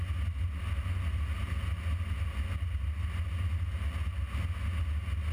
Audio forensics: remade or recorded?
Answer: recorded